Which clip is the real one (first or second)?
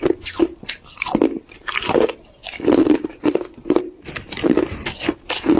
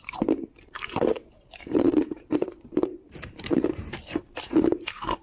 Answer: first